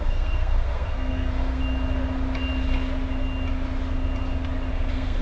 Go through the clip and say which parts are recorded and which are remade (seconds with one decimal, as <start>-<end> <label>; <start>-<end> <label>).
0.0-1.6 remade; 1.6-4.7 recorded; 4.7-5.2 remade